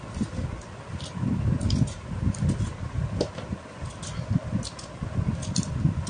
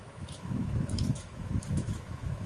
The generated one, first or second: second